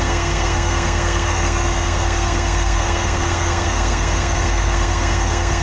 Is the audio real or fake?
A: fake